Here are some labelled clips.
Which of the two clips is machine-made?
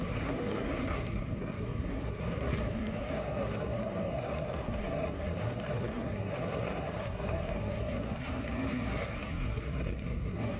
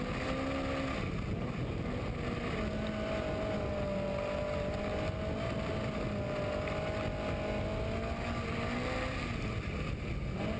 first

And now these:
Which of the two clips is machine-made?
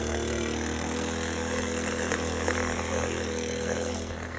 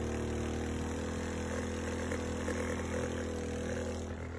first